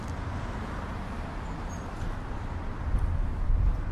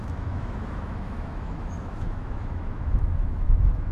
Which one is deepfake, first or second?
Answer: second